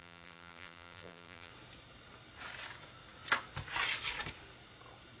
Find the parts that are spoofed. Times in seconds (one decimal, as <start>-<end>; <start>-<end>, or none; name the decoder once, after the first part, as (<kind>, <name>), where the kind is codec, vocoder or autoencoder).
0.0-1.5 (vocoder, BigVGAN v2)